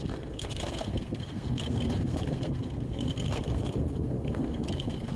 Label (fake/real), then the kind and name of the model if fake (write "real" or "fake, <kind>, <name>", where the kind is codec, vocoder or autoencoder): fake, codec, SNAC